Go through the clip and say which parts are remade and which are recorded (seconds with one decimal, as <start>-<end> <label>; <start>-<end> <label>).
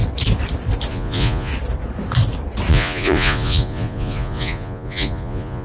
0.0-0.9 recorded; 0.9-1.5 remade; 1.5-2.7 recorded; 2.7-5.6 remade